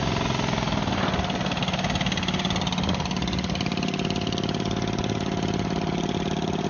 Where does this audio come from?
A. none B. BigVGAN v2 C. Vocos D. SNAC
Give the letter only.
A